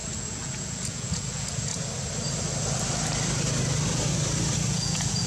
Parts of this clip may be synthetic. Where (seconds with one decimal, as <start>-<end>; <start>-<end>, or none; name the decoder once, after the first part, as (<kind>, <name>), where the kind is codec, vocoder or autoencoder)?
0.0-1.7 (vocoder, Vocos); 4.7-5.3